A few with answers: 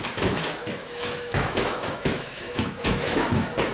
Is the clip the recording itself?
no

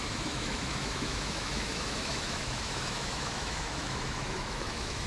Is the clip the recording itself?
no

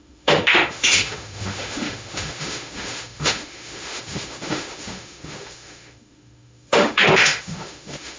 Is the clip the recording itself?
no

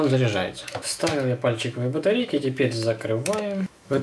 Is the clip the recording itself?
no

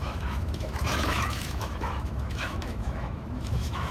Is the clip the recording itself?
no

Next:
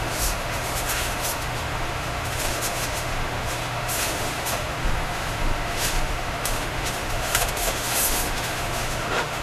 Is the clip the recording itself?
no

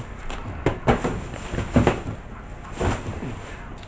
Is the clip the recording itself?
yes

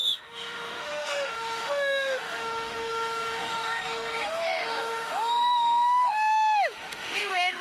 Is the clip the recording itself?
no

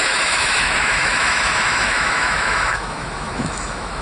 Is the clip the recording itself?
no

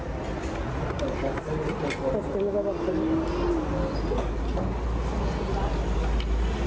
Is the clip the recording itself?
yes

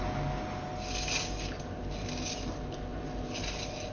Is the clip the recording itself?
yes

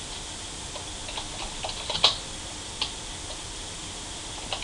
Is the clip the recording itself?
yes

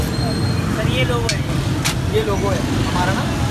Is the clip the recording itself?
yes